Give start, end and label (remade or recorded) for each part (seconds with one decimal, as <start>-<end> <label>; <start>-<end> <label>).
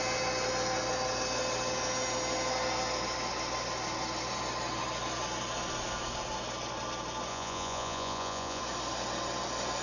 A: 0.0-7.3 recorded; 7.3-8.6 remade; 8.6-9.8 recorded